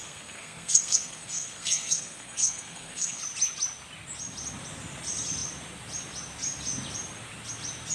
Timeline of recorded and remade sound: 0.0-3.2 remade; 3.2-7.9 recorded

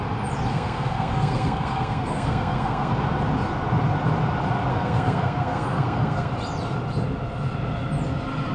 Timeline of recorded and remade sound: 0.0-0.5 recorded; 0.5-2.9 remade; 2.9-4.7 recorded; 4.7-6.3 remade; 6.3-8.5 recorded

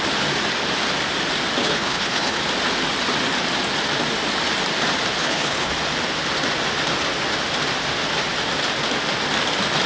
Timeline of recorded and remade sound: 0.0-1.6 recorded; 1.6-2.4 remade; 2.4-5.2 recorded; 5.2-5.7 remade; 5.7-9.9 recorded

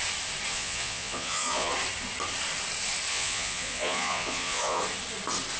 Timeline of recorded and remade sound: 0.0-0.5 recorded; 0.5-1.7 remade; 1.7-3.1 recorded; 3.1-4.8 remade; 4.8-5.6 recorded

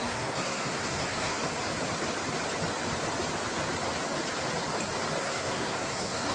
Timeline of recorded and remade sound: 0.0-1.4 remade; 1.4-5.2 recorded; 5.2-6.3 remade

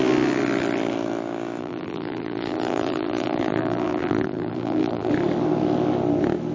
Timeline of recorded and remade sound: 0.0-1.6 recorded; 1.6-5.1 remade; 5.1-6.5 recorded